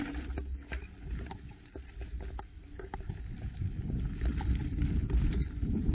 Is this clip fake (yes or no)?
no